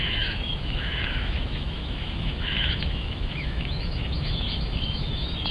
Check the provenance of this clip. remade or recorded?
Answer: remade